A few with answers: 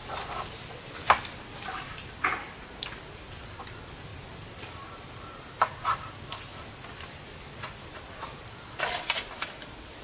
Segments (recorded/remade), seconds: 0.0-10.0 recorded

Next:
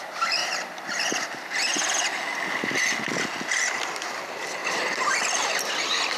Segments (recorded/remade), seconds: 0.0-6.2 recorded